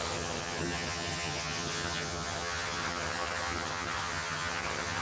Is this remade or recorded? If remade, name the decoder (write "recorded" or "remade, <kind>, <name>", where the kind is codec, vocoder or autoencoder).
remade, vocoder, HiFi-GAN